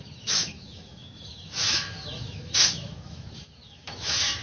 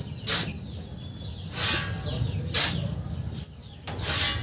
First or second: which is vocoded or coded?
first